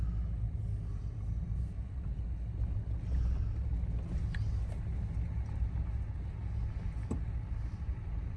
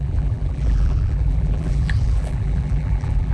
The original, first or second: first